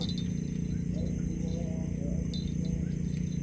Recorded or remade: recorded